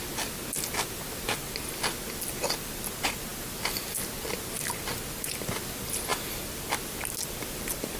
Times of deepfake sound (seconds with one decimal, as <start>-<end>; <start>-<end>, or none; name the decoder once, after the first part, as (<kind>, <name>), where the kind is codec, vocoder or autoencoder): none